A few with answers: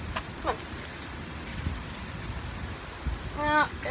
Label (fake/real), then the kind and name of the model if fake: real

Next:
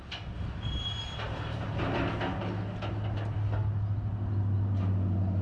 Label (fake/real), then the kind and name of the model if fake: real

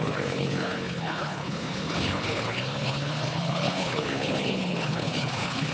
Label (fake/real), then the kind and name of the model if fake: fake, codec, HILCodec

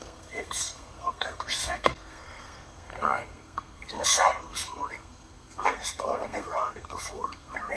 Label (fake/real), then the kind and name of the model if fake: fake, codec, SNAC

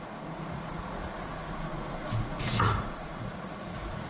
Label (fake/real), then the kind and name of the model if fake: fake, vocoder, Vocos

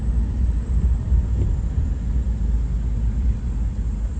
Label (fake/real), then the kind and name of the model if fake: real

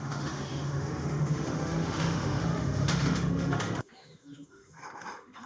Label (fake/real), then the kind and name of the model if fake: fake, autoencoder, DAC-VAE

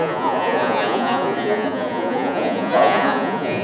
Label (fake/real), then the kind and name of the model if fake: fake, vocoder, Vocos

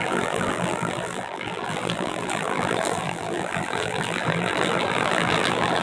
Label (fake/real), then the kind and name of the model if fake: fake, vocoder, BigVGAN v2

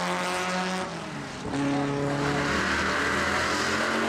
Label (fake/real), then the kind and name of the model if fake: real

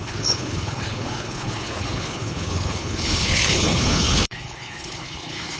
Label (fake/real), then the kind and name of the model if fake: fake, codec, HILCodec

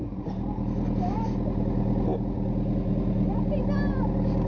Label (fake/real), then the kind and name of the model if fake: real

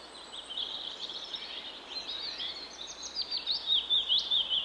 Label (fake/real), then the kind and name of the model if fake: fake, vocoder, BigVGAN v2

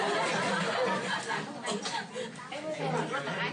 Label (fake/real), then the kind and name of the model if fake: real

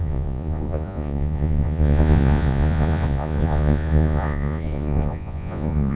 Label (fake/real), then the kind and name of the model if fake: fake, vocoder, Vocos